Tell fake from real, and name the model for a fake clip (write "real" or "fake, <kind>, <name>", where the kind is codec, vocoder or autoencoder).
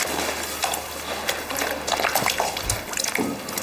real